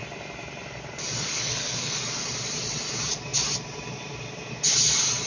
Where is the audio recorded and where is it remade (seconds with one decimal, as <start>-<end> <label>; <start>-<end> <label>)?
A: 0.0-1.3 recorded; 1.3-2.0 remade; 2.0-5.3 recorded